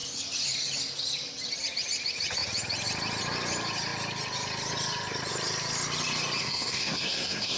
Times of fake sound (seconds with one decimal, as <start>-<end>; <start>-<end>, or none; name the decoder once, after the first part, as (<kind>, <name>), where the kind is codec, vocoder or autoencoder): 6.4-7.6 (codec, SNAC)